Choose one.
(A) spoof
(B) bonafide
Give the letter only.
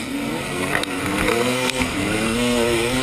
A